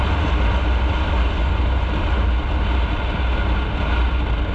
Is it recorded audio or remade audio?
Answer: recorded